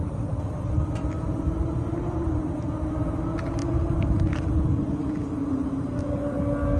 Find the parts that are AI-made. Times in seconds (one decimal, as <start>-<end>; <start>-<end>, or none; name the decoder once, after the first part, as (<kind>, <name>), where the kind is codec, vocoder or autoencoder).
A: none